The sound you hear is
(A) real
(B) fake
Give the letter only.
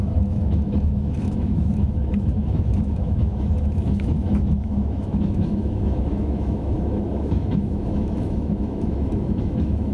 B